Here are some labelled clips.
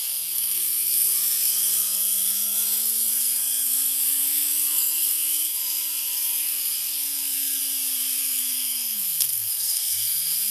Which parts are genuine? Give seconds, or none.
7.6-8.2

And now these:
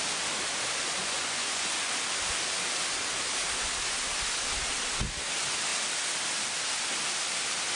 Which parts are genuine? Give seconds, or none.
0.0-1.0; 1.9-7.8

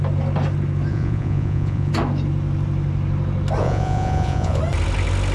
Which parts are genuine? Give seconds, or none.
0.0-0.9; 1.9-3.6; 4.6-5.3

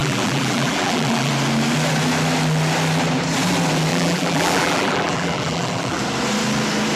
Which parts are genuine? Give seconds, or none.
1.3-3.9; 6.0-7.0

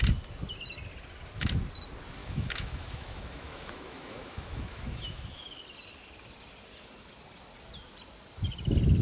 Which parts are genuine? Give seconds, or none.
0.0-2.2; 5.6-9.0

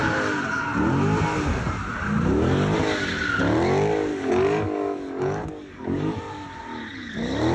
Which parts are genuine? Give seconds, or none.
0.0-4.1; 6.2-7.5

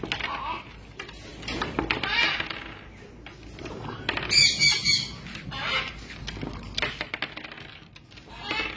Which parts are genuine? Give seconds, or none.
0.0-8.8

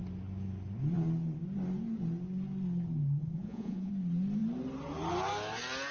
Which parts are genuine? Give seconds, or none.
0.0-3.2; 3.9-5.9